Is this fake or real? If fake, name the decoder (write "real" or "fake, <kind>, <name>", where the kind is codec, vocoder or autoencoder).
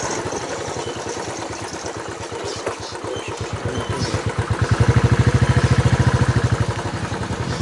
real